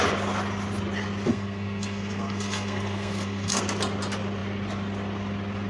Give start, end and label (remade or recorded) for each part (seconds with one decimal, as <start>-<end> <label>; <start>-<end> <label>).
0.0-1.3 recorded; 1.3-3.6 remade; 3.6-5.7 recorded